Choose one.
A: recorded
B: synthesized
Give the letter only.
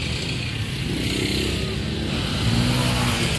A